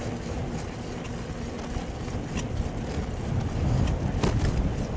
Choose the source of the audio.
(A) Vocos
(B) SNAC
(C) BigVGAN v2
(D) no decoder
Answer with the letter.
D